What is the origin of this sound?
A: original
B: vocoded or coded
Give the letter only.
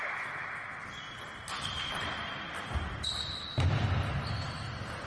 A